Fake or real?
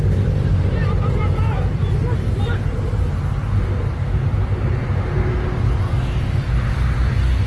real